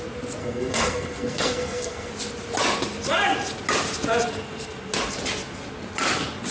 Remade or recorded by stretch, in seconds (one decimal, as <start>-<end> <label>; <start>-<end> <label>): 0.0-0.4 recorded; 0.4-2.1 remade; 2.1-6.5 recorded